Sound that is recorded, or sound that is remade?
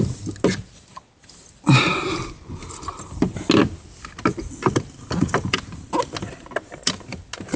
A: recorded